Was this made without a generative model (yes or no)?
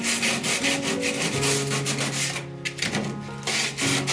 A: yes